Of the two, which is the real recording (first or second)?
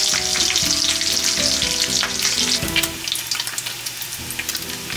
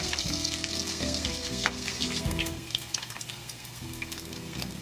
first